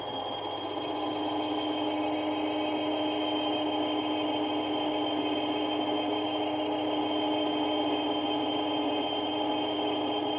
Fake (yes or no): no